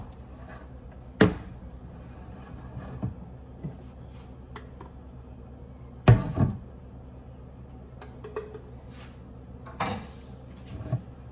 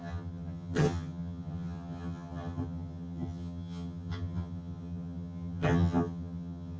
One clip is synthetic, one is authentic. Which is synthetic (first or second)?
second